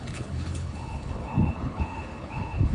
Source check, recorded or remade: remade